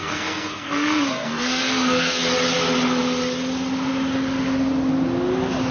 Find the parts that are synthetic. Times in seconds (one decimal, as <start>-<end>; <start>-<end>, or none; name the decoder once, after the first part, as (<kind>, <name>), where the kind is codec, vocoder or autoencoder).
0.0-2.2 (codec, SNAC)